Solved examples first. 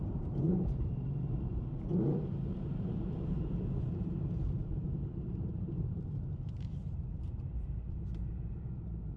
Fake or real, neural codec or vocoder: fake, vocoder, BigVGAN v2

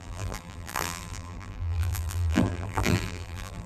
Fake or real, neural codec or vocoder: fake, vocoder, BigVGAN v2